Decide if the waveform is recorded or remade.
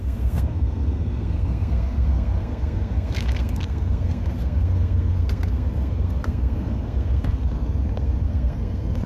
remade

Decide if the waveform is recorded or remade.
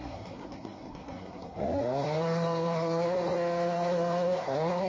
remade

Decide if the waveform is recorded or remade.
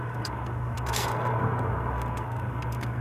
remade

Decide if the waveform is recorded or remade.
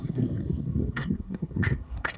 remade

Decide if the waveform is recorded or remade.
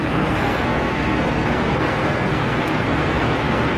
remade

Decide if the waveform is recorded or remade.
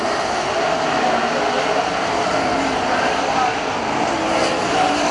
recorded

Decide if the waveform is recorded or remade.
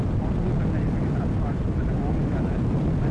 recorded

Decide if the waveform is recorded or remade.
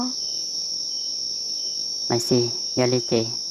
recorded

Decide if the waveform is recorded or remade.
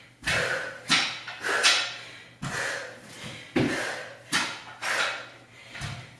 recorded